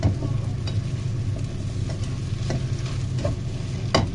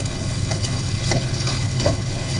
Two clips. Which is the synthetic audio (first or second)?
second